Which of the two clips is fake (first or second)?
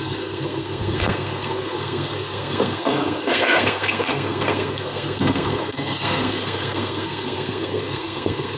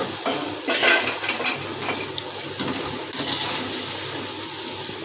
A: first